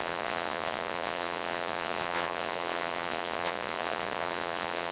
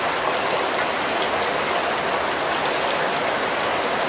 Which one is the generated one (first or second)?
first